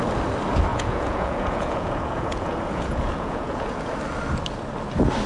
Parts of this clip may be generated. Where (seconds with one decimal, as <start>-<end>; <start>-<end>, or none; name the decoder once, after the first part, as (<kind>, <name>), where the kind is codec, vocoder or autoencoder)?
0.7-3.9 (vocoder, Vocos)